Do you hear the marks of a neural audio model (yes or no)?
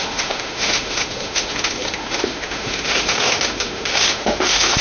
yes